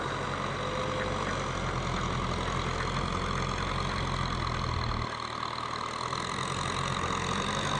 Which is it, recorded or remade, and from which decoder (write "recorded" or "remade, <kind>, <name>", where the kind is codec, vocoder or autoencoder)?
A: recorded